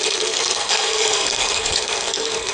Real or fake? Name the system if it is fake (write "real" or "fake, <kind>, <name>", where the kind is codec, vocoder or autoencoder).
fake, codec, SNAC